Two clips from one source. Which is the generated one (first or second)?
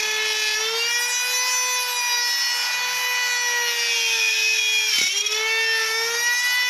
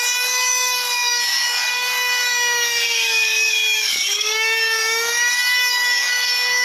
second